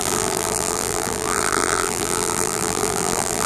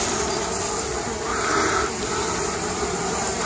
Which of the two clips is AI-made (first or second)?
first